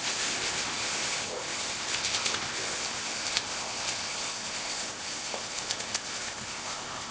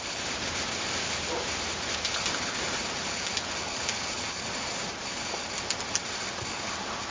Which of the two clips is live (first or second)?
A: second